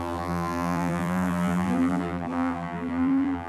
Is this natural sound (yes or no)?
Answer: no